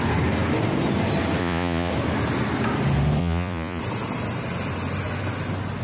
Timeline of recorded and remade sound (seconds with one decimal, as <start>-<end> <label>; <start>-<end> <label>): 0.0-1.4 recorded; 1.4-1.9 remade; 1.9-3.2 recorded; 3.2-3.8 remade; 3.8-5.8 recorded